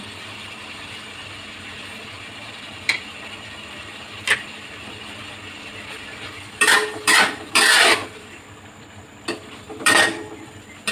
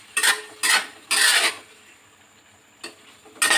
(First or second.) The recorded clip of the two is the second